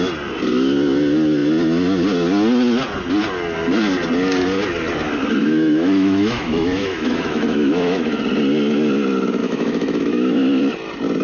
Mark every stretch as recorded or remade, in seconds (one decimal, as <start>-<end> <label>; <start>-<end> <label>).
0.0-5.4 recorded; 5.4-8.2 remade; 8.2-9.4 recorded; 9.4-10.6 remade; 10.6-11.2 recorded